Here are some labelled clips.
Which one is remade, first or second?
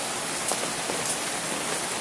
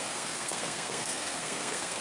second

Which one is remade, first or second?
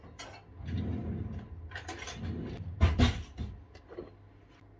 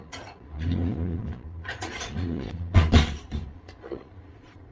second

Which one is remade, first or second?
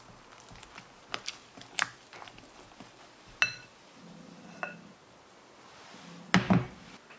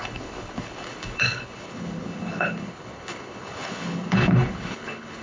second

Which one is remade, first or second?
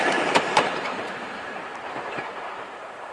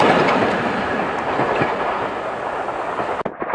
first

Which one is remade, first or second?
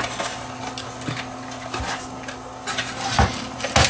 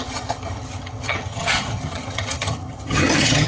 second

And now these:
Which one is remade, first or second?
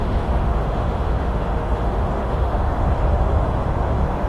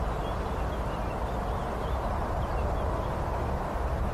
first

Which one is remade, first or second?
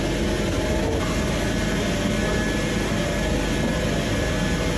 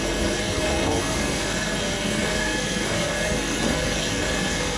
second